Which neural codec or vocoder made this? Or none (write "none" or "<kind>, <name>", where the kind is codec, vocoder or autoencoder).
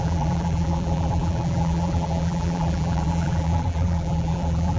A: vocoder, BigVGAN v2